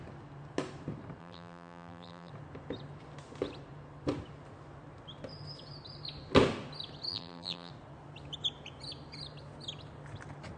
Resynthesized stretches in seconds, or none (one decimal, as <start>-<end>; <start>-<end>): 1.2-2.3; 7.1-7.7